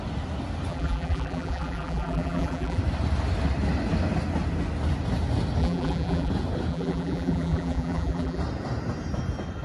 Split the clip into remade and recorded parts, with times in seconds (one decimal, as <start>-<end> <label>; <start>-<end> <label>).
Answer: 0.0-0.7 recorded; 0.7-2.8 remade; 2.8-5.6 recorded; 5.6-6.3 remade; 6.3-6.7 recorded; 6.7-8.4 remade; 8.4-9.6 recorded